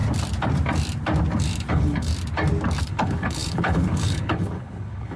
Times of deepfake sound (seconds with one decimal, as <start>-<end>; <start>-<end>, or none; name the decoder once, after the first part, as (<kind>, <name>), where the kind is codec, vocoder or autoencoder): 1.7-2.1 (codec, HILCodec); 2.8-5.2